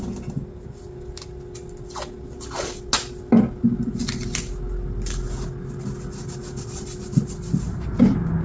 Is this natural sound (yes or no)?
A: yes